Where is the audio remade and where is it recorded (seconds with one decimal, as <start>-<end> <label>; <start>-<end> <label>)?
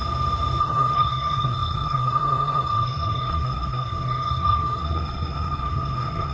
0.0-0.6 recorded; 0.6-6.3 remade